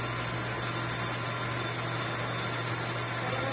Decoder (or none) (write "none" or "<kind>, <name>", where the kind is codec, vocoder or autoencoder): none